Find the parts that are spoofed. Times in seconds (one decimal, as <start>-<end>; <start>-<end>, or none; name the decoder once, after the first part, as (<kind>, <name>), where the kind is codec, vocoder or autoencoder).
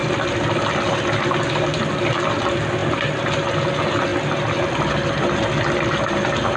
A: 2.8-3.6 (vocoder, BigVGAN v2); 4.1-5.2